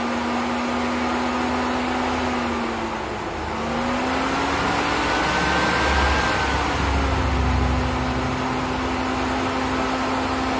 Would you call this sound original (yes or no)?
yes